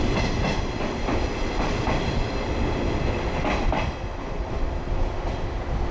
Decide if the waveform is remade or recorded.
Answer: recorded